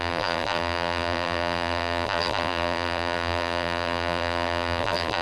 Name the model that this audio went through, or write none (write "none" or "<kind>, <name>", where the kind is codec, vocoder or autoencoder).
vocoder, BigVGAN v2